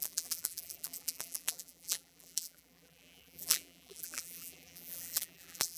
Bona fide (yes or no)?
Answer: no